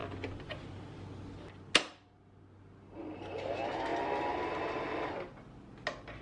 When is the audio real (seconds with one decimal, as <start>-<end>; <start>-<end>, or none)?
0.0-6.2

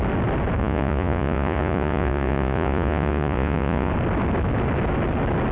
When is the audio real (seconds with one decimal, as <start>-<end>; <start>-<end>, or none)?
0.0-0.6; 3.9-5.5

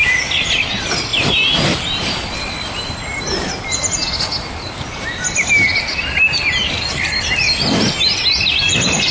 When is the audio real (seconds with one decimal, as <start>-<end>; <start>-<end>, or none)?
0.0-9.1

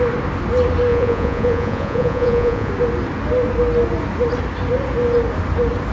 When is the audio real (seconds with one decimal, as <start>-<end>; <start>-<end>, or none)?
0.0-0.9; 2.7-5.9

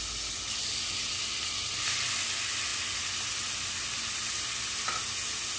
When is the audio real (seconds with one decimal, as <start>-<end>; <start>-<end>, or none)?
0.0-5.6